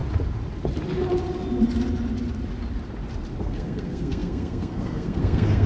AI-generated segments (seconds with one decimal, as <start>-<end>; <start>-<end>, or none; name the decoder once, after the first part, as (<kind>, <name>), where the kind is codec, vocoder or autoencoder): 3.4-5.7 (codec, SNAC)